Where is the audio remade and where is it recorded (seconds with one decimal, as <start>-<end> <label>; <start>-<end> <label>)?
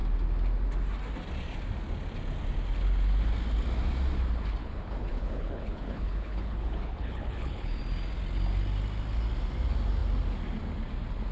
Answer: 0.0-4.6 recorded; 4.6-7.8 remade; 7.8-11.3 recorded